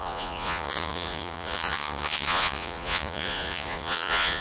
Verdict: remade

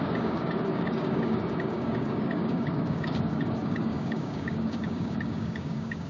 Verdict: remade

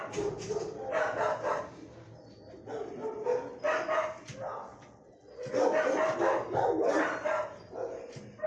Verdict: recorded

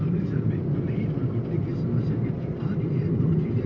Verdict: recorded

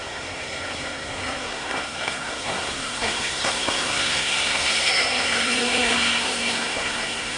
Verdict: remade